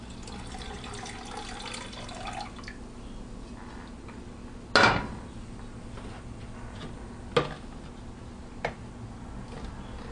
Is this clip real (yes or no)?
yes